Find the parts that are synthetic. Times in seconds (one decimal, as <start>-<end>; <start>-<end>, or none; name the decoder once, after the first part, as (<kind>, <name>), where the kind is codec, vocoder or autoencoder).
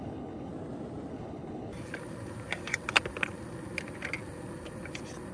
0.0-0.5 (codec, HILCodec); 1.1-1.7